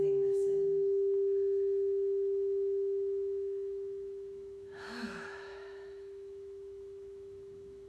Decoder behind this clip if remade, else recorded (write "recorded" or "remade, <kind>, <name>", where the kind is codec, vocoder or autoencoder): remade, autoencoder, DAC-VAE